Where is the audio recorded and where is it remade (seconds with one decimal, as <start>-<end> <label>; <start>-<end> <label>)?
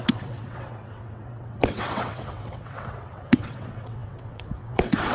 0.0-5.1 remade